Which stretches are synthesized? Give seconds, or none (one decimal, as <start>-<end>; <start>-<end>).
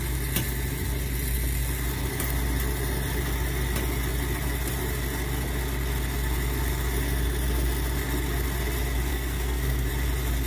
9.1-9.9